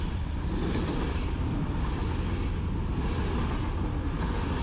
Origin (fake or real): real